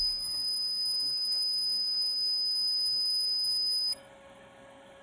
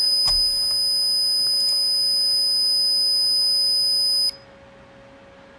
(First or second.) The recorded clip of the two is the second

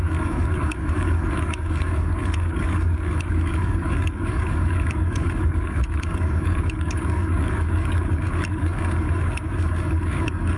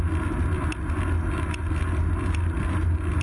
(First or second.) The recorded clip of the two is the second